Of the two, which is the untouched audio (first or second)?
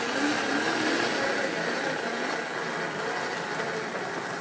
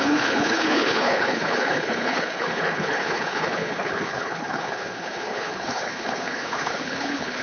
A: first